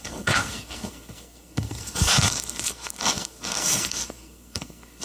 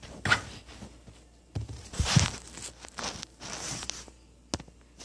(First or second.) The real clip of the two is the second